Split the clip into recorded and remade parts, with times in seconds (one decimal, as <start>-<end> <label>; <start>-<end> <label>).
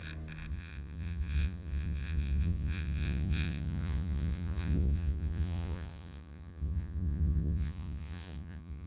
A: 0.0-0.5 recorded; 0.5-8.9 remade